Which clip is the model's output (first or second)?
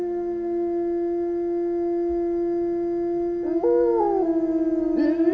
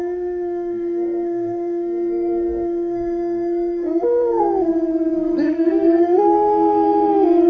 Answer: second